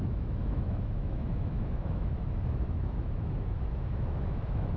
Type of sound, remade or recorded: remade